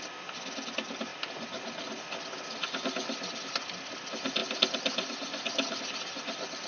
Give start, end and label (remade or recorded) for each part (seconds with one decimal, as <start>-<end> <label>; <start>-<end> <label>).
0.0-6.7 recorded